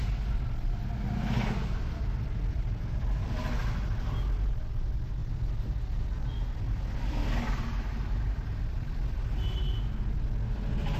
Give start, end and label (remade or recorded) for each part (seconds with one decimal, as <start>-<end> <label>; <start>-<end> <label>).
0.0-11.0 recorded